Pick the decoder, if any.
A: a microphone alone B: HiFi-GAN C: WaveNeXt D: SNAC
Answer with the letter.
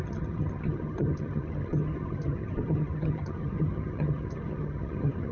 B